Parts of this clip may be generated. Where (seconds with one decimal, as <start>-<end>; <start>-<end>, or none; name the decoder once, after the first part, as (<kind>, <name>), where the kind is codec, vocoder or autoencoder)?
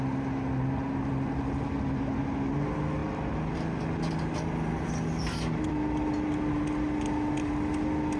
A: none